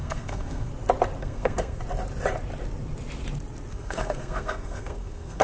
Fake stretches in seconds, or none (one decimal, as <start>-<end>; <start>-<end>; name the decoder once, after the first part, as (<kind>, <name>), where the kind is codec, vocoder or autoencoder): 0.0-0.7 (codec, SNAC); 1.2-1.8; 3.7-5.4